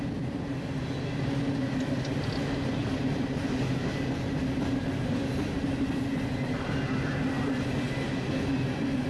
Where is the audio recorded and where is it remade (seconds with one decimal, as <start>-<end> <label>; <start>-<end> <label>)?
0.0-2.8 recorded; 2.8-3.5 remade; 3.5-9.1 recorded